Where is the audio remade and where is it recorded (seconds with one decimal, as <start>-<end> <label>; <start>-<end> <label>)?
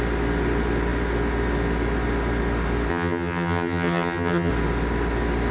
0.0-2.9 recorded; 2.9-4.5 remade; 4.5-5.5 recorded